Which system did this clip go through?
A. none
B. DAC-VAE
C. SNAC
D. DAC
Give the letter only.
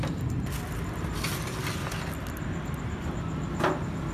A